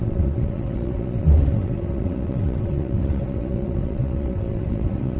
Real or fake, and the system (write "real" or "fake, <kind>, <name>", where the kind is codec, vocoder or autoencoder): fake, vocoder, WaveNeXt